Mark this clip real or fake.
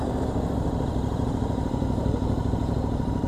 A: fake